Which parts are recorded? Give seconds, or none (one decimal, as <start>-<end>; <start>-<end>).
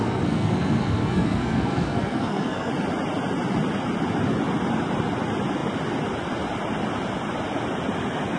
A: 2.7-8.4